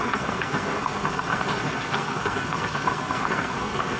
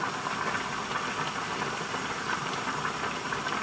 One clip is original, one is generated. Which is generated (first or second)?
first